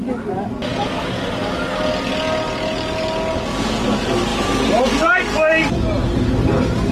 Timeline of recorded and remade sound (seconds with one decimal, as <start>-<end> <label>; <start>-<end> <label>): 0.0-0.7 recorded; 0.7-1.4 remade; 1.4-6.9 recorded